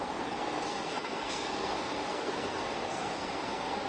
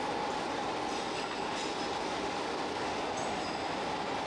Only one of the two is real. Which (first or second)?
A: second